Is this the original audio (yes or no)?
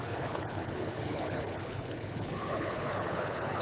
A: no